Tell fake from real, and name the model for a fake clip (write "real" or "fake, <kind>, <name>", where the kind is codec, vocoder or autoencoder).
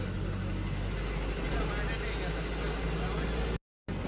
real